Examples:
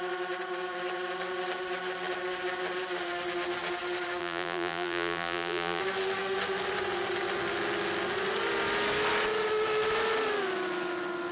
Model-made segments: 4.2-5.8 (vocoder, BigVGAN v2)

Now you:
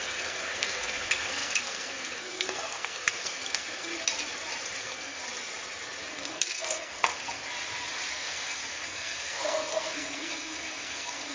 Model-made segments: 0.0-3.9 (codec, SNAC); 4.8-5.2; 6.1-7.4; 8.1-11.3

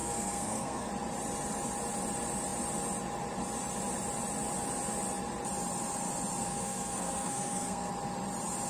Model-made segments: 0.0-0.9 (codec, SNAC); 6.4-7.9

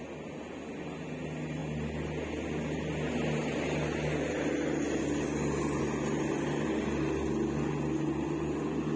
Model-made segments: none